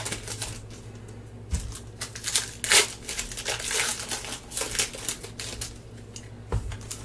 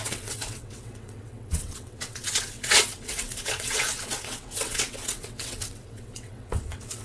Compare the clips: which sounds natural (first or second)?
first